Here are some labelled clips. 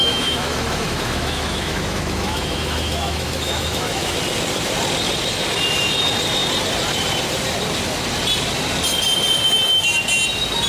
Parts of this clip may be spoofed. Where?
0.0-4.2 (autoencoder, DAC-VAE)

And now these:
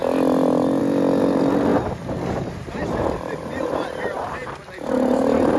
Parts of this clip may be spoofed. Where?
1.7-4.5 (vocoder, BigVGAN v2)

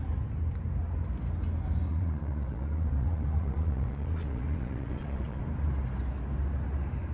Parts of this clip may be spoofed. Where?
1.9-5.4 (vocoder, Vocos)

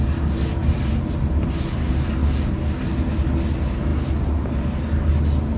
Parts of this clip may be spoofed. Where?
none

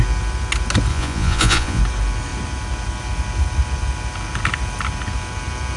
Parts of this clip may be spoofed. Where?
0.9-1.8 (vocoder, Vocos)

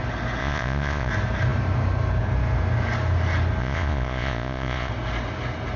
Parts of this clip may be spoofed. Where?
0.4-1.1 (vocoder, Vocos); 3.6-4.9

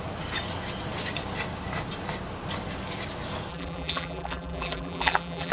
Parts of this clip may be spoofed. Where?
3.5-5.5 (vocoder, BigVGAN v2)

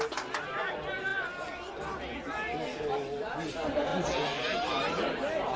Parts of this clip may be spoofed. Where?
none